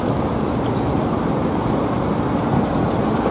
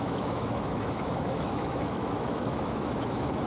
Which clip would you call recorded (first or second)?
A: first